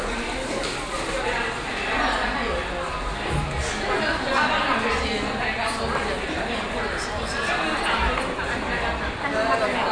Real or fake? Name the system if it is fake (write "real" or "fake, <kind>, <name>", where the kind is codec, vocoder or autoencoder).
real